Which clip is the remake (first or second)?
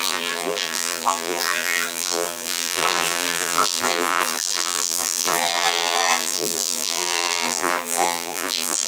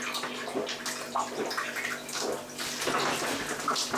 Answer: first